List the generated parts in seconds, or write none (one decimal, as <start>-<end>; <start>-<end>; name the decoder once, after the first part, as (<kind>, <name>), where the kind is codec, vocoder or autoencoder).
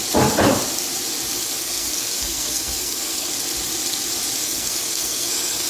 1.4-3.3 (codec, SNAC); 4.4-5.7